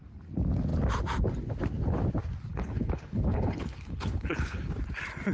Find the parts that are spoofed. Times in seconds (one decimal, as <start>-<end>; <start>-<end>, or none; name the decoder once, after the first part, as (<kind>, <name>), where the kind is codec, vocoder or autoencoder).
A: 2.5-4.6 (codec, HILCodec)

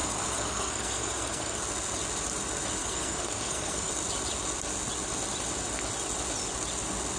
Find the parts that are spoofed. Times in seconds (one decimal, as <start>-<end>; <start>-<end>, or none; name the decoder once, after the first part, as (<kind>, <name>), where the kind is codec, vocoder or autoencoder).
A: 0.0-1.6 (codec, SNAC); 2.8-3.9

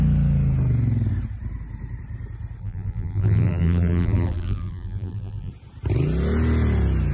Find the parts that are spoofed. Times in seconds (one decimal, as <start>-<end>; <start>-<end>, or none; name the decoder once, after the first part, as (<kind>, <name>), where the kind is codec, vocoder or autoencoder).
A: 2.6-5.5 (vocoder, BigVGAN v2)